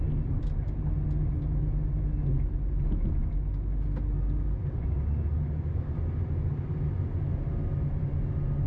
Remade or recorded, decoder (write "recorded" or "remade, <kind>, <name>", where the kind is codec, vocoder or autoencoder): recorded